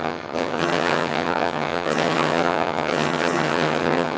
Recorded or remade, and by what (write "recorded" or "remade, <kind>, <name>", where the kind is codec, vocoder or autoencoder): remade, vocoder, HiFi-GAN